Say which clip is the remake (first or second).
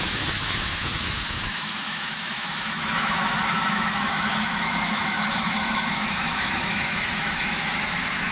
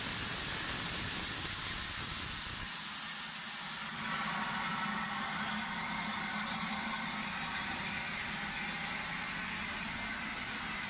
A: first